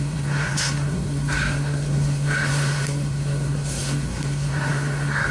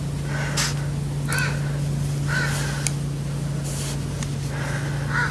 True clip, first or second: second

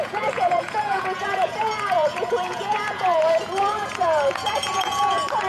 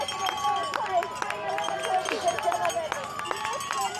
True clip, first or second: second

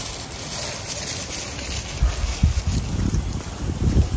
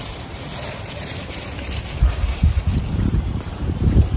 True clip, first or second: first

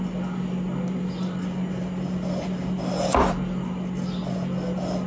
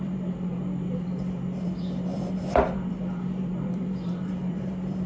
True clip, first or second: first